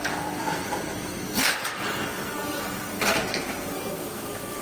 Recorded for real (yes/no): no